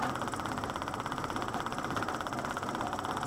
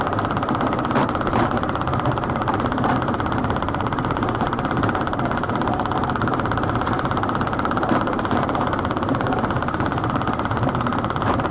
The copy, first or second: second